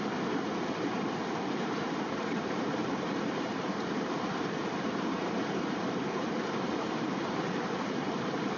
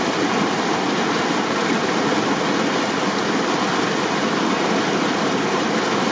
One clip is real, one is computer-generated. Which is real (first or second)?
second